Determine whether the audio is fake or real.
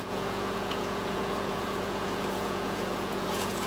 fake